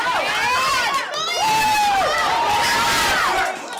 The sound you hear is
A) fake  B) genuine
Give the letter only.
B